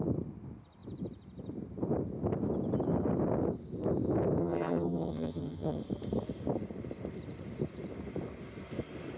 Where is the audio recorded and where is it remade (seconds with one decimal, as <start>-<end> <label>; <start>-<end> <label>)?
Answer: 0.0-4.4 recorded; 4.4-5.8 remade; 5.8-9.2 recorded